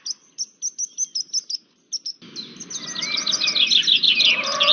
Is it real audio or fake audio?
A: real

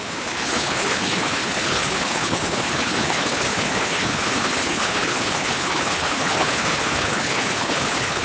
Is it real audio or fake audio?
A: fake